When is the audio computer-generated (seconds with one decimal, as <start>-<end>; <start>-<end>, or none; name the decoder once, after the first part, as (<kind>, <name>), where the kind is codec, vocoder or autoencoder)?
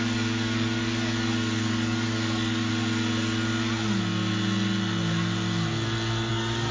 0.0-2.7 (codec, DAC); 6.3-6.7